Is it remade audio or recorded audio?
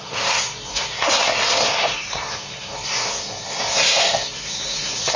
remade